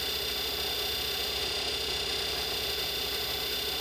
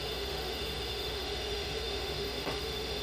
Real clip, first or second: first